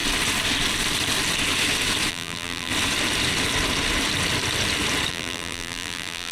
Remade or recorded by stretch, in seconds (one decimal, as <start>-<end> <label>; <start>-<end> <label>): 0.0-2.1 recorded; 2.1-2.7 remade; 2.7-5.1 recorded; 5.1-6.3 remade